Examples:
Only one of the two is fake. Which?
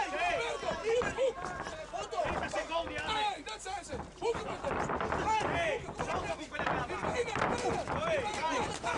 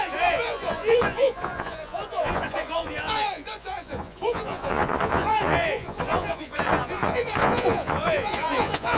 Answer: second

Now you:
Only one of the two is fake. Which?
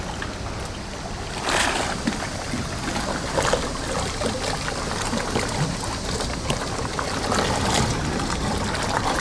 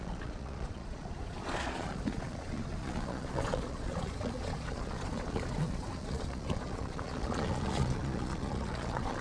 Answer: second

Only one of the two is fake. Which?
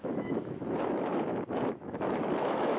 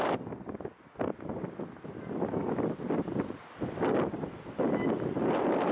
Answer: first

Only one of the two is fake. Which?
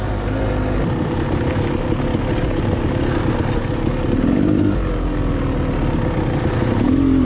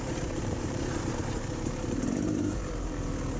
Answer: second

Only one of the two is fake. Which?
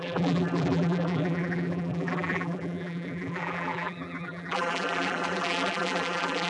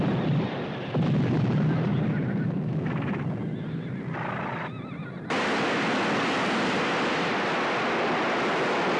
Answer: first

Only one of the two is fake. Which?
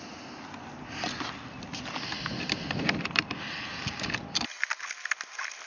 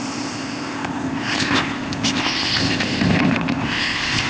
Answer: second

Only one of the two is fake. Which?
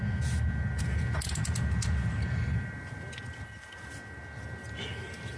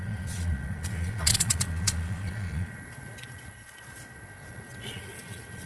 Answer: second